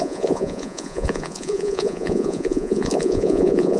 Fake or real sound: fake